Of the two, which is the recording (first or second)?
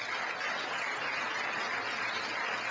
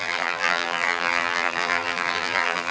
first